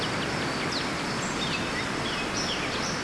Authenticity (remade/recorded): recorded